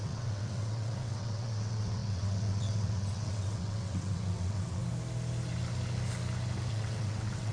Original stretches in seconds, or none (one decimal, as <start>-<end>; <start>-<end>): 4.8-6.7